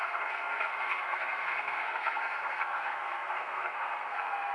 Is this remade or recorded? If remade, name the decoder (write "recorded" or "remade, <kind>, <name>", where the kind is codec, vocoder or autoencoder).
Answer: remade, codec, SNAC